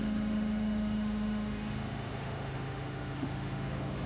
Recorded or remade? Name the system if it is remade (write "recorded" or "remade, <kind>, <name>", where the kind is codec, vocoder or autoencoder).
remade, autoencoder, DAC-VAE